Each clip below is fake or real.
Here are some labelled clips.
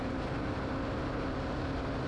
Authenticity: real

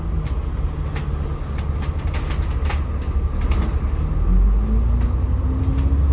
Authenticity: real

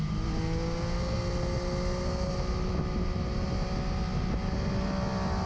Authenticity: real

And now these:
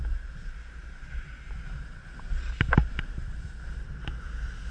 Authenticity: real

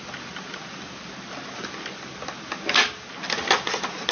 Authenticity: real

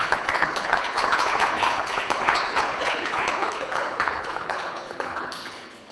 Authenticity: fake